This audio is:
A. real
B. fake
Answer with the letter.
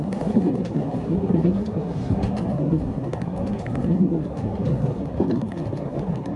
B